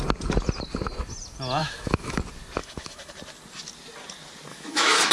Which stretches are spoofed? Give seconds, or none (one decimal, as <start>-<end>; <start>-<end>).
1.6-2.2; 2.6-3.1; 4.5-5.1